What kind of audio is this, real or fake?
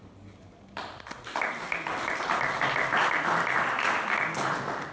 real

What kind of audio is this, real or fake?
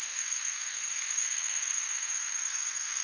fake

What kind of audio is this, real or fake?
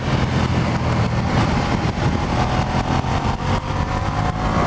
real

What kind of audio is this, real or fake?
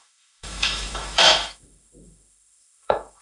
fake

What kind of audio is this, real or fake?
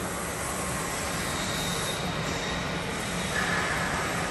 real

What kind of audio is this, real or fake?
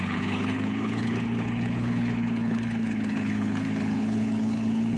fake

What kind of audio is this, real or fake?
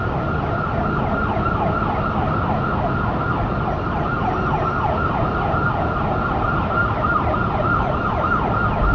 real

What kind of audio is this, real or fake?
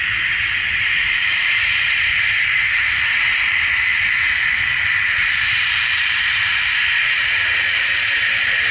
fake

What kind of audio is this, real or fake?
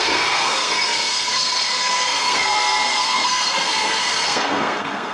fake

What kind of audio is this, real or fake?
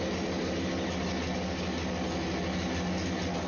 real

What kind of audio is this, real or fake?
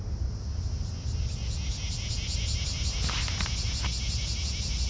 real